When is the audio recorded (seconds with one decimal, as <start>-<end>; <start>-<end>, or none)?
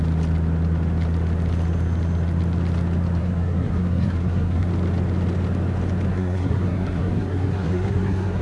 0.0-3.2; 4.7-6.1